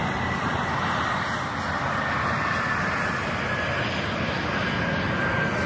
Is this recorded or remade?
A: recorded